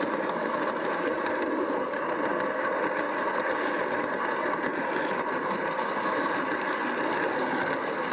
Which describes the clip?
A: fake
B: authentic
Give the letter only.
B